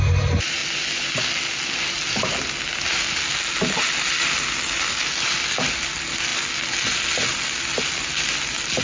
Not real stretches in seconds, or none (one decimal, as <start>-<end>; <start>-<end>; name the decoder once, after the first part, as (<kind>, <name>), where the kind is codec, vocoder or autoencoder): none